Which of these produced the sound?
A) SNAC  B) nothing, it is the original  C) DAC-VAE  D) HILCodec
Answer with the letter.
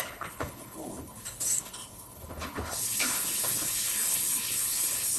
D